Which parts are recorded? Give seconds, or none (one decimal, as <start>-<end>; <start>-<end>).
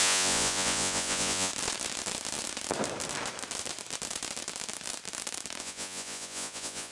1.5-5.6